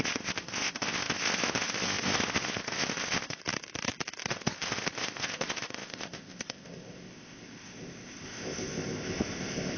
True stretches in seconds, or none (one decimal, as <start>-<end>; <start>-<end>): 3.4-4.3